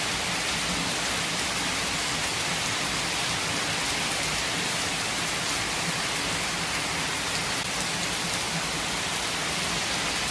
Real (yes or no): yes